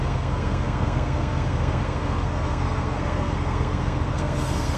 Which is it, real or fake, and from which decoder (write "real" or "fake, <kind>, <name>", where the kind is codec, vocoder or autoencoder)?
fake, codec, SNAC